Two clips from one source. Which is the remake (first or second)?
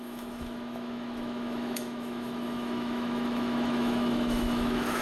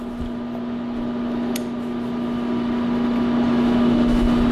first